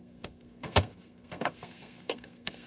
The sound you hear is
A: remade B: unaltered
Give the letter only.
A